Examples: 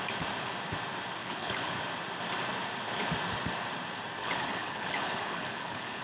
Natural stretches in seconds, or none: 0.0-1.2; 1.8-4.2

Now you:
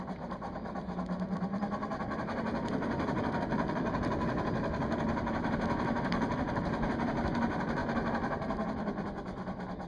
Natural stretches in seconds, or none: 7.8-9.9

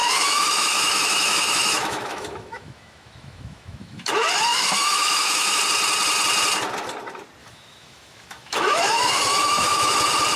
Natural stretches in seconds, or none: 4.1-4.5; 5.6-7.4; 9.9-10.4

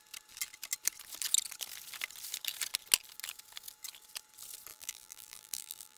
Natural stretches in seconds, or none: 0.0-4.7

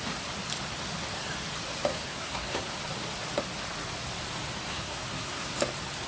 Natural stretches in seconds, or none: 0.0-1.9; 2.7-4.7; 5.6-6.1

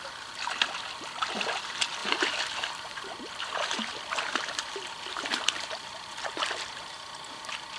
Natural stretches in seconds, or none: 0.0-2.0; 3.0-5.1; 5.9-7.8

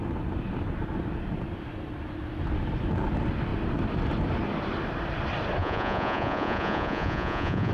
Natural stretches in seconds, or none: 0.0-5.6

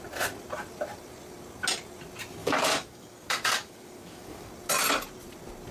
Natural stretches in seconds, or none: 0.0-2.4; 4.5-5.7